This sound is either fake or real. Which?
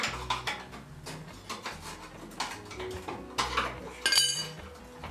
real